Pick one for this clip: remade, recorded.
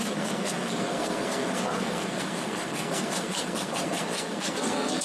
remade